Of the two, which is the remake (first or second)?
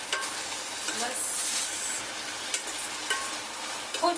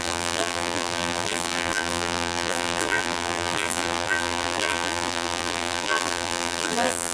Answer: second